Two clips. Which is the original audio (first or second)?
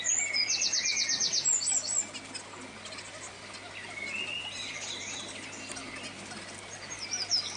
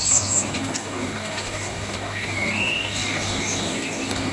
first